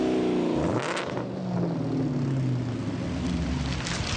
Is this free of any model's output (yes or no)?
yes